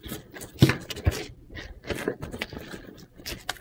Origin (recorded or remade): recorded